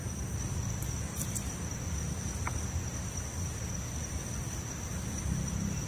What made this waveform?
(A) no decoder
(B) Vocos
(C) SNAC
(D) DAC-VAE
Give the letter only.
A